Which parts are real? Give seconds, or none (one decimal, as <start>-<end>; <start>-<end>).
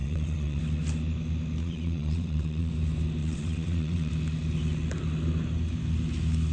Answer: 0.6-1.6; 2.7-3.2; 4.1-6.5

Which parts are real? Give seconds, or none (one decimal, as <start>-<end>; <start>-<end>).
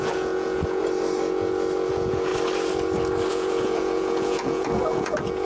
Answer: 0.8-1.9; 2.3-3.3